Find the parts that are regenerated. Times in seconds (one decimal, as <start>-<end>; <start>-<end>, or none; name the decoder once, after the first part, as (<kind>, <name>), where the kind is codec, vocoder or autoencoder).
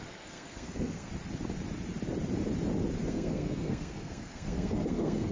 0.0-1.1 (codec, SNAC); 3.1-5.3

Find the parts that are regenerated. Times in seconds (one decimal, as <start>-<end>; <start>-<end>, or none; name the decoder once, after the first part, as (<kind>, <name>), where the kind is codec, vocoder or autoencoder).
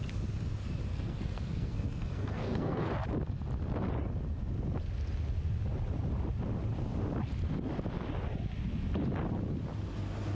0.9-2.9 (codec, SNAC)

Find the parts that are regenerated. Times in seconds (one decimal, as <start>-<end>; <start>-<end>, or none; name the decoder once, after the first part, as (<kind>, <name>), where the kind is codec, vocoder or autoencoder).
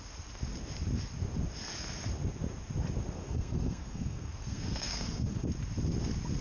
3.2-5.4 (codec, SNAC)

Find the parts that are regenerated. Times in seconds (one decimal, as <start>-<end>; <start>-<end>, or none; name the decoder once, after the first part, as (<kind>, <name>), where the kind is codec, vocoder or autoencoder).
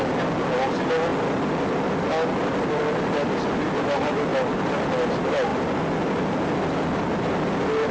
none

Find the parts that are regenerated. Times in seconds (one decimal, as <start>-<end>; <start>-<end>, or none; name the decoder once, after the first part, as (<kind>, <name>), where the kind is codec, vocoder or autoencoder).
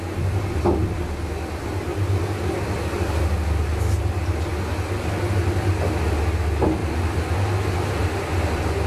none